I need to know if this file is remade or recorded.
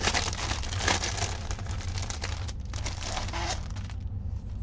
recorded